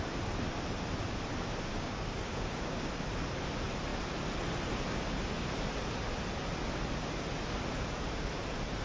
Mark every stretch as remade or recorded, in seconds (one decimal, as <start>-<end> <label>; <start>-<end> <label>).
0.0-1.7 recorded; 1.7-2.9 remade; 2.9-8.8 recorded